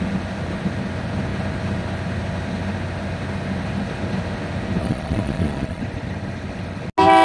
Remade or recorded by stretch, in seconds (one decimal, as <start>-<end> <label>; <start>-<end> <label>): 0.0-4.8 recorded; 4.8-5.8 remade; 5.8-7.2 recorded